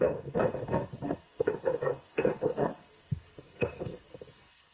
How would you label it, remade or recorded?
remade